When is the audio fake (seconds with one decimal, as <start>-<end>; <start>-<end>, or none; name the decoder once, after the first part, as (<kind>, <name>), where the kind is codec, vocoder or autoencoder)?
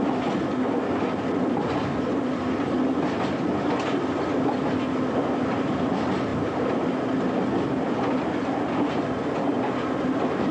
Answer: none